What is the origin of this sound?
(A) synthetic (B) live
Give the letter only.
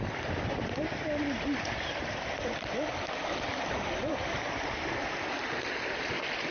A